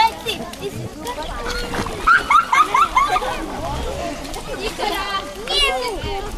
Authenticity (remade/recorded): recorded